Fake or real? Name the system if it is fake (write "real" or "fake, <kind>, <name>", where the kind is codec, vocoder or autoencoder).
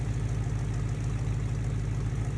real